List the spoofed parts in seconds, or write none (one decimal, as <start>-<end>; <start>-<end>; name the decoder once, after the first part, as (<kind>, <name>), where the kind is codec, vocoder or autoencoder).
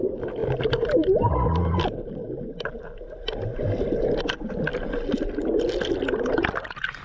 none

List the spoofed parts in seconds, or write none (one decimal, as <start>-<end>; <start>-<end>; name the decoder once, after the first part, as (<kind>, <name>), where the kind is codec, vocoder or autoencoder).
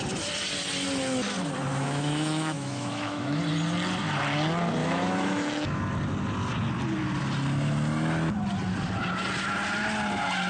1.7-3.4 (autoencoder, DAC-VAE); 4.8-5.8